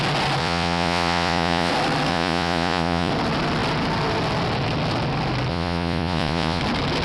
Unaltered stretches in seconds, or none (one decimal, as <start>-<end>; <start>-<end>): 0.0-0.4; 1.7-2.1; 3.1-5.5; 6.6-7.0